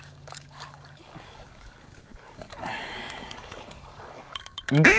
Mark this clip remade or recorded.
remade